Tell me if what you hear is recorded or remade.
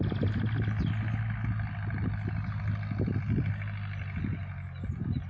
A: recorded